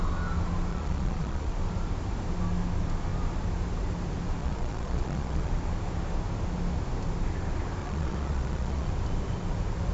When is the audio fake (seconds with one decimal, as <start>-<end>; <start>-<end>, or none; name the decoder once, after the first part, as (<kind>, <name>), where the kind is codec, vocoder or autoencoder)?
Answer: 0.7-1.5 (vocoder, Vocos); 4.4-5.5; 7.8-8.9